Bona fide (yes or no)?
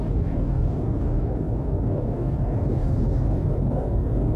no